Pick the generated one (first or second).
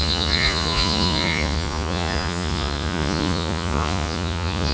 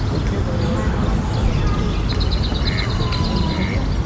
first